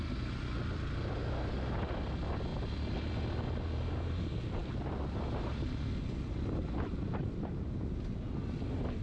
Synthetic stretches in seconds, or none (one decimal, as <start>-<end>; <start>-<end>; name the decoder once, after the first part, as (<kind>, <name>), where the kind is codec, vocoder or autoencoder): none